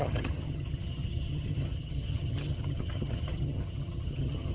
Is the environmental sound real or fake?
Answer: fake